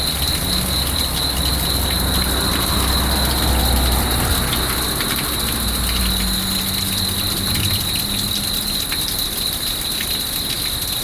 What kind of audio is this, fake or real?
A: real